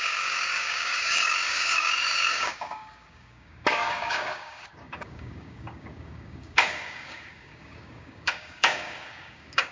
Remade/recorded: remade